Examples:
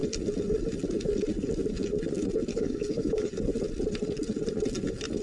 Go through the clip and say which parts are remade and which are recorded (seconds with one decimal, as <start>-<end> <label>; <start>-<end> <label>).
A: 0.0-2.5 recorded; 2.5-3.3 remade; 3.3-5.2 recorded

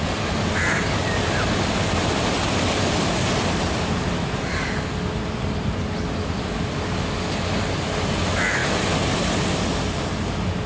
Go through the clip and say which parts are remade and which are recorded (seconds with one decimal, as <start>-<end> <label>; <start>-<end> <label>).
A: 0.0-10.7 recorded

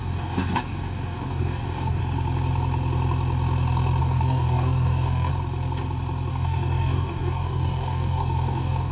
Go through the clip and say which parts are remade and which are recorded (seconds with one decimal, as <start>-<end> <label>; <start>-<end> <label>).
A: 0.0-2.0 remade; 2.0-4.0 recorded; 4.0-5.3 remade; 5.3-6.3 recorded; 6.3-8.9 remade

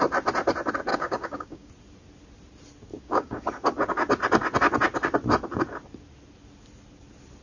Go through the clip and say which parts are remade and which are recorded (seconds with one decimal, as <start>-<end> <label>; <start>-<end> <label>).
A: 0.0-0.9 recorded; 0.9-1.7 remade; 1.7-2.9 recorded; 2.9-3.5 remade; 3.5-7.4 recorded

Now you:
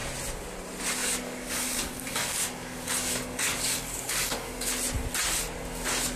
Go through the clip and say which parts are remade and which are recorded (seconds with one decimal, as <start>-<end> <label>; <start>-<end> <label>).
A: 0.0-1.0 recorded; 1.0-4.7 remade; 4.7-6.2 recorded

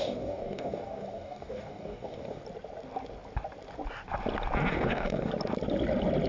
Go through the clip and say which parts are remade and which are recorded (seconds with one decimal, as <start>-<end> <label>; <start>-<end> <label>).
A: 0.0-2.4 remade; 2.4-4.7 recorded; 4.7-5.3 remade; 5.3-6.3 recorded

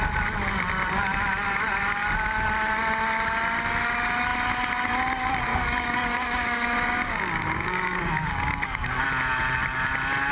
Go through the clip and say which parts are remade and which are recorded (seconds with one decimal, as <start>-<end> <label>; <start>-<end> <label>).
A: 0.0-5.5 recorded; 5.5-9.0 remade; 9.0-10.3 recorded